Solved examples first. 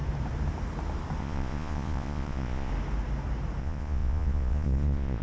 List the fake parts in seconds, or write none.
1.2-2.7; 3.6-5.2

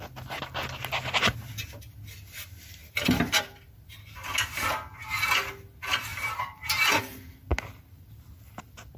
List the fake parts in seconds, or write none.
2.8-3.4; 6.1-7.0

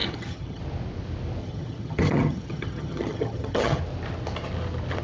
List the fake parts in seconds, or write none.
0.0-0.6; 1.4-3.8

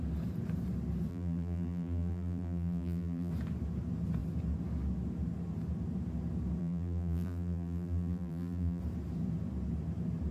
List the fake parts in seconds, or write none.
1.1-3.3; 6.6-8.8